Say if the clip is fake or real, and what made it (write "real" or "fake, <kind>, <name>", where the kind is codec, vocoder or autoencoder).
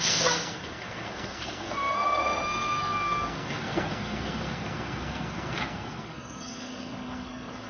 fake, codec, SNAC